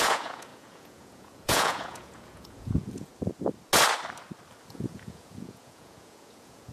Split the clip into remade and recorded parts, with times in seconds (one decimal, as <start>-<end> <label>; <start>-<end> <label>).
0.0-3.1 remade; 3.1-4.7 recorded; 4.7-6.7 remade